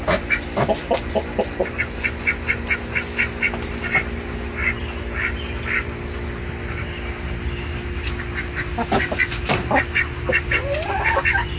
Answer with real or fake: real